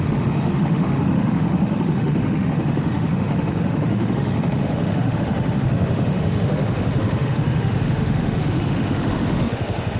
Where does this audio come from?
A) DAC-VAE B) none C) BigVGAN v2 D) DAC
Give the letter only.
A